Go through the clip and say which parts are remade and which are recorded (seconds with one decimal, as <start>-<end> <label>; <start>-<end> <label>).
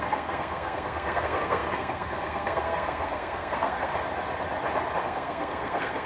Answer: 0.0-3.9 remade; 3.9-5.0 recorded; 5.0-6.1 remade